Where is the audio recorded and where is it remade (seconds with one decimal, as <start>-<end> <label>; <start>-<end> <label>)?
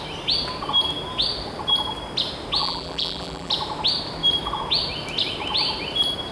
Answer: 0.0-2.6 recorded; 2.6-3.5 remade; 3.5-6.3 recorded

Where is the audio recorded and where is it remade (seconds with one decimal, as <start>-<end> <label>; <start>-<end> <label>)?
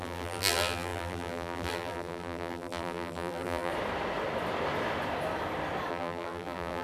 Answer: 0.0-3.7 remade; 3.7-5.9 recorded; 5.9-6.8 remade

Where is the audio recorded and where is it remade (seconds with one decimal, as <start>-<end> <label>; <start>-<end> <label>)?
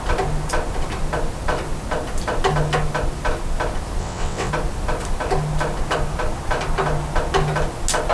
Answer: 0.0-4.0 recorded; 4.0-4.5 remade; 4.5-8.1 recorded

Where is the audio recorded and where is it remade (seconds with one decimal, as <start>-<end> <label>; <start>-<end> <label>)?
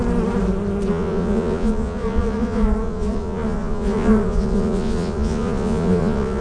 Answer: 0.0-0.9 recorded; 0.9-6.4 remade